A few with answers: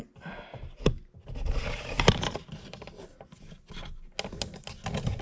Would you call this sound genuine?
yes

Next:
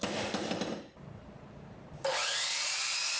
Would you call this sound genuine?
yes